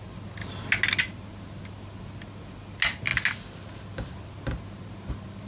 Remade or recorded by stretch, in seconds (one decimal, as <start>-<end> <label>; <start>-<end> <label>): 0.0-5.5 recorded